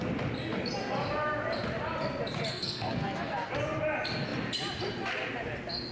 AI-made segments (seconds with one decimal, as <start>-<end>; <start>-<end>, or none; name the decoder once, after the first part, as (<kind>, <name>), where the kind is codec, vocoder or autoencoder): 2.5-3.5 (codec, SNAC)